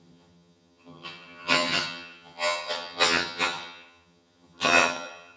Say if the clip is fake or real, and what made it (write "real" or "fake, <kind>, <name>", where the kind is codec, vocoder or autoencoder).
fake, vocoder, HiFi-GAN